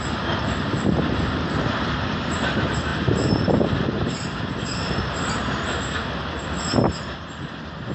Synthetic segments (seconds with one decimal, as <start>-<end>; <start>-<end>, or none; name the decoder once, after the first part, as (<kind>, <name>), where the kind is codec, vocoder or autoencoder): 2.9-5.7 (vocoder, BigVGAN v2)